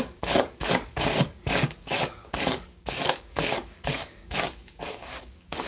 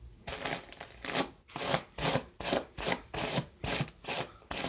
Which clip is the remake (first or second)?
first